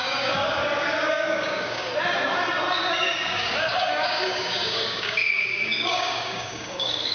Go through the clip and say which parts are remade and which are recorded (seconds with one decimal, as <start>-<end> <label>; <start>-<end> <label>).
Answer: 0.0-0.6 remade; 0.6-1.1 recorded; 1.1-1.9 remade; 1.9-2.7 recorded; 2.7-7.1 remade